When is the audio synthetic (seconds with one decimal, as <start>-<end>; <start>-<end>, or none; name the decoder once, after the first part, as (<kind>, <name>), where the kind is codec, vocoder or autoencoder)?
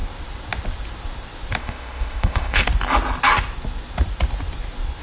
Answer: 1.6-2.6 (codec, ZipCodec)